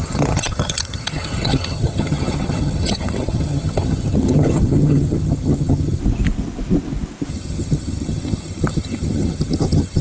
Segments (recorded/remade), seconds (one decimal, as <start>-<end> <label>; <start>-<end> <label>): 0.0-6.0 remade; 6.0-7.3 recorded; 7.3-10.0 remade